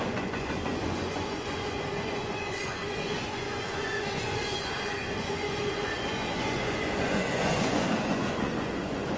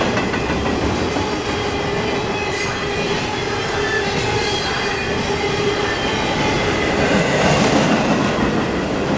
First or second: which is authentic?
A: second